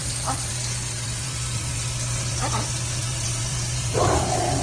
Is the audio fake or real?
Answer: fake